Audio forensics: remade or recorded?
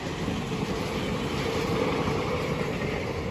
recorded